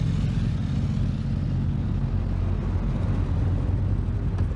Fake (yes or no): no